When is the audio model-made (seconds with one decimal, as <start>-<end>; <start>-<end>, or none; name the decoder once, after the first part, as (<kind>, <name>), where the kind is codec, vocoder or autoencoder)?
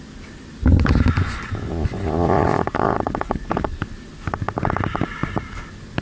0.7-3.8 (vocoder, Vocos)